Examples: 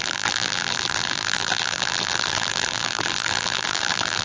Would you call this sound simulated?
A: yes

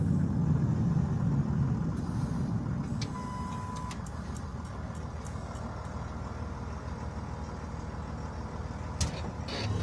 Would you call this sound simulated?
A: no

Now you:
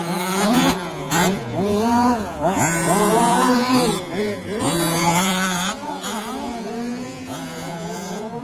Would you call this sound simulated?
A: yes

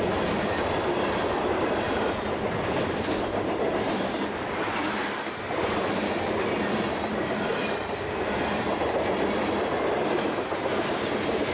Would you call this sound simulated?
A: no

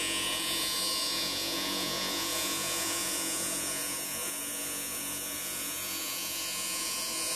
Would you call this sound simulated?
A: yes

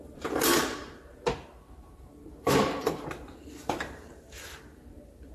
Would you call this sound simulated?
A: yes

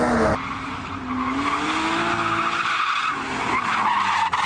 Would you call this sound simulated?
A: no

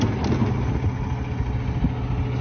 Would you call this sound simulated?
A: no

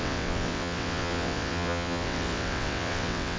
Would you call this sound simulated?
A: yes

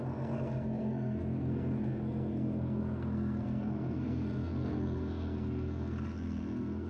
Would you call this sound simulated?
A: yes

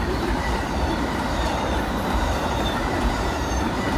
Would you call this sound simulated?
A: yes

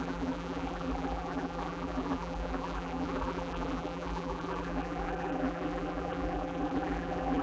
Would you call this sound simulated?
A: yes